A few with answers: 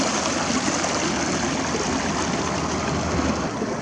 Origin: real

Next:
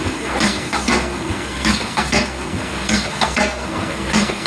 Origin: fake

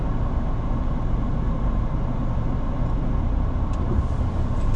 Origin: real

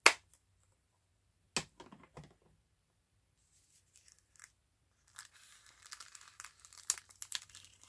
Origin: real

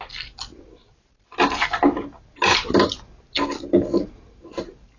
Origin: real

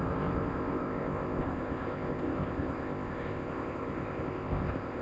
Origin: fake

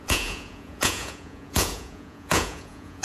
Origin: fake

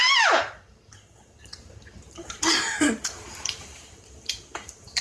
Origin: fake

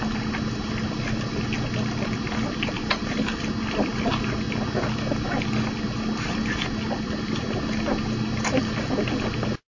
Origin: real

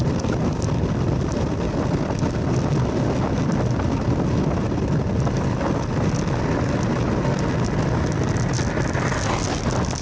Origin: real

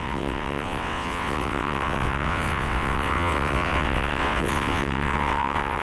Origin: fake